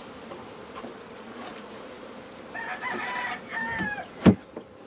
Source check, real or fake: fake